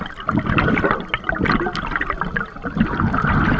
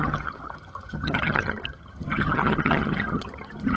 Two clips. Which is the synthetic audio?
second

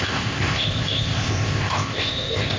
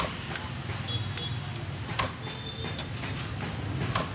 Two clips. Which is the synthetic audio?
first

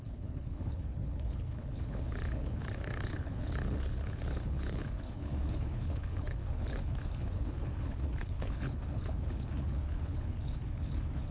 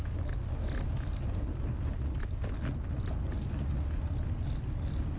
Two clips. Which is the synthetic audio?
first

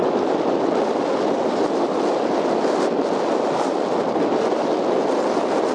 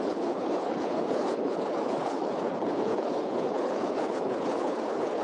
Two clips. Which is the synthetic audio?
second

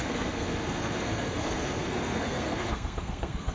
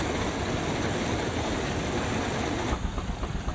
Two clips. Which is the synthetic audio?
first